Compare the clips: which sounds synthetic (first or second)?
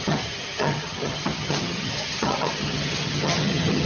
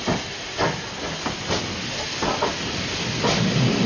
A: first